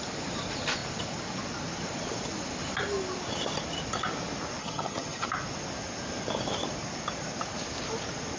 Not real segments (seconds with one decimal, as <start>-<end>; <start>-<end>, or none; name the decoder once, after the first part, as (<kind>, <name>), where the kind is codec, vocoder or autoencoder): 4.6-5.3 (vocoder, HiFi-GAN)